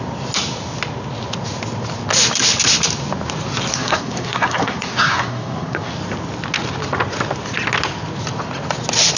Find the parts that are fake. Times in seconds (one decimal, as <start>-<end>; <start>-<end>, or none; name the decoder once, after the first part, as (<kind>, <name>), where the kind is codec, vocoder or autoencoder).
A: 3.7-5.9 (codec, SNAC)